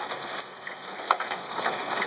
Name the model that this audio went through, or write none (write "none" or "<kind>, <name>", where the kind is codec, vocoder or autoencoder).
codec, SNAC